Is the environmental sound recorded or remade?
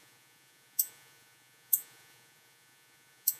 remade